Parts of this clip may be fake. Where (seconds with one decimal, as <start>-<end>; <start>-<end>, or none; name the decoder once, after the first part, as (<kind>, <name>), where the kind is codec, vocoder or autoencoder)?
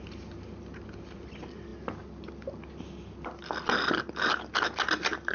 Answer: none